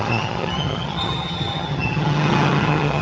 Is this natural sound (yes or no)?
no